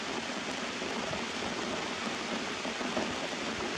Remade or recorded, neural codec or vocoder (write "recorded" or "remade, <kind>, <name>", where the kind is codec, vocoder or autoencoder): recorded